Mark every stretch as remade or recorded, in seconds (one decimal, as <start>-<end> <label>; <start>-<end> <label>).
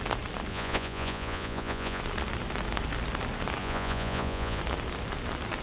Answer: 0.0-0.5 recorded; 0.5-2.0 remade; 2.0-3.6 recorded; 3.6-4.6 remade; 4.6-5.6 recorded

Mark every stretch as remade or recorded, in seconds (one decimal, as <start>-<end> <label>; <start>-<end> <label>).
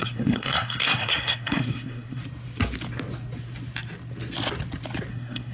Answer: 0.0-2.2 remade; 2.2-5.1 recorded; 5.1-5.5 remade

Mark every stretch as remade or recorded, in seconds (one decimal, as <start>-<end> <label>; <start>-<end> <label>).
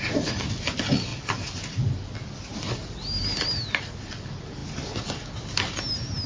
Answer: 0.0-6.3 recorded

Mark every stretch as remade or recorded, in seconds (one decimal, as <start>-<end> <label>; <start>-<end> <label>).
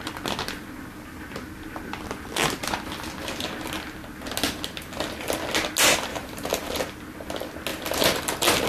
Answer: 0.0-6.1 recorded; 6.1-6.8 remade; 6.8-8.7 recorded